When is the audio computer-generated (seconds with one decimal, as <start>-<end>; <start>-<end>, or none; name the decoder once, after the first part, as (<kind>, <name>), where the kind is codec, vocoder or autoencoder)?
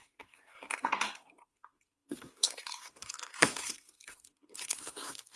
0.0-5.4 (codec, SNAC)